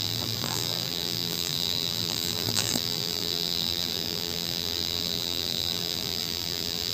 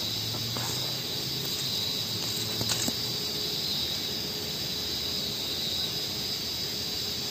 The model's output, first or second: first